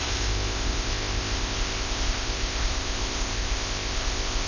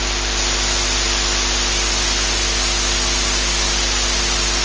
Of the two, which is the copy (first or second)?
first